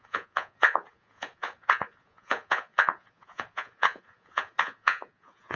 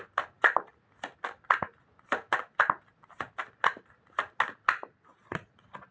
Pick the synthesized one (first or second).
first